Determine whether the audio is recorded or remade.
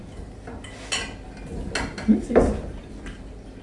recorded